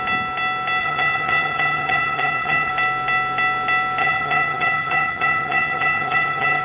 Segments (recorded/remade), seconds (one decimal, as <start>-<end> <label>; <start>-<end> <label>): 0.0-0.8 recorded; 0.8-2.7 remade; 2.7-4.0 recorded; 4.0-6.6 remade